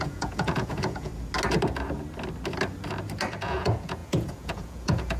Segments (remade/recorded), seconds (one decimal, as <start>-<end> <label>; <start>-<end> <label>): 0.0-1.1 remade; 1.1-3.3 recorded; 3.3-5.2 remade